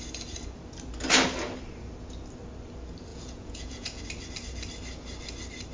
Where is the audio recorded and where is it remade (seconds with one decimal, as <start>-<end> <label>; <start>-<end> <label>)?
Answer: 0.0-3.1 recorded; 3.1-4.0 remade; 4.0-5.7 recorded